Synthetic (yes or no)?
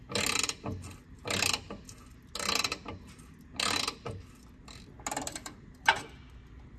no